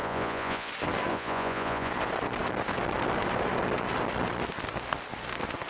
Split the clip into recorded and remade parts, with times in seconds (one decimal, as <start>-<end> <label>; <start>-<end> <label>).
0.0-0.7 remade; 0.7-1.1 recorded; 1.1-1.9 remade; 1.9-5.7 recorded